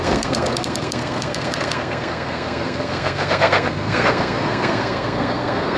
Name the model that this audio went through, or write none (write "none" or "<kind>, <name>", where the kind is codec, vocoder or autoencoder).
codec, SNAC